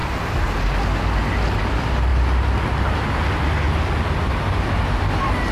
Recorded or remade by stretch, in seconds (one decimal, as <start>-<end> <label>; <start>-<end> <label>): 0.0-5.5 recorded